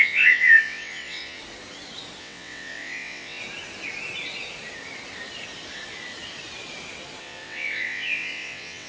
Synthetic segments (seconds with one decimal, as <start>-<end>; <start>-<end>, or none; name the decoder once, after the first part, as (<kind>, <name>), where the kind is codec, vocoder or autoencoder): 0.0-1.4 (vocoder, WaveNeXt); 2.2-3.4; 7.2-8.9